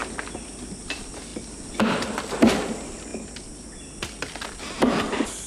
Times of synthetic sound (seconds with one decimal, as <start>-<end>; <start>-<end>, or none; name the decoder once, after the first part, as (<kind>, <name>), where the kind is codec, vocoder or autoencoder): 0.8-5.5 (vocoder, BigVGAN v2)